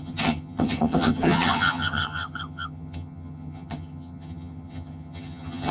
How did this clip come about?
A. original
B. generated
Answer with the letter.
B